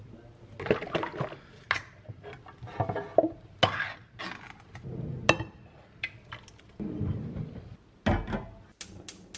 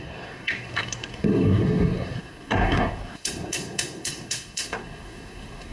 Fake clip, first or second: second